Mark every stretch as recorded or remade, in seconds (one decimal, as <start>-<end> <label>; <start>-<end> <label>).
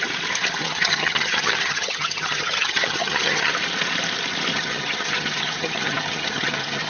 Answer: 0.0-0.6 recorded; 0.6-3.5 remade; 3.5-4.5 recorded; 4.5-6.9 remade